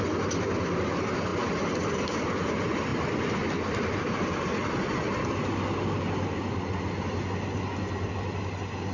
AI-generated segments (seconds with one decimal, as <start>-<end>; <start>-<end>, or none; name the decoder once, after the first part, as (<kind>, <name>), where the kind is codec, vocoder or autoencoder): none